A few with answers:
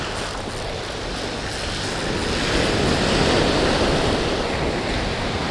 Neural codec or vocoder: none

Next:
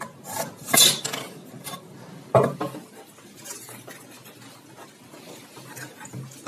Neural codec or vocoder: none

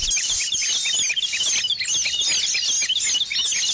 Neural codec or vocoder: none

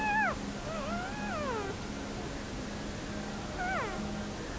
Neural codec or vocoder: none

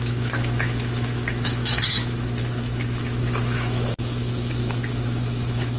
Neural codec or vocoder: autoencoder, DAC-VAE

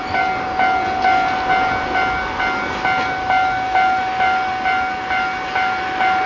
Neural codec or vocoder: none